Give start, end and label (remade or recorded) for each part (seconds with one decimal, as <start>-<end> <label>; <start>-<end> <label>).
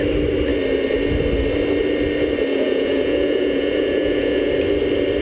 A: 0.0-2.5 recorded; 2.5-4.5 remade; 4.5-5.2 recorded